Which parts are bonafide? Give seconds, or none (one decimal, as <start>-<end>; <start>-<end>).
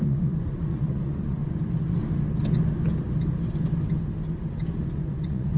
1.4-4.8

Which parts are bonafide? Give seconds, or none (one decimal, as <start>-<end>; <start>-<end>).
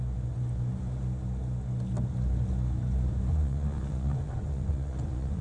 0.0-3.3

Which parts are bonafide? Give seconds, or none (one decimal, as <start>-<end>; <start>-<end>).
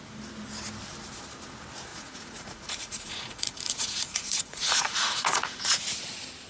0.0-1.9; 5.8-6.5